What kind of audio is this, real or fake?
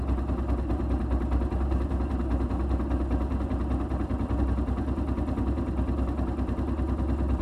real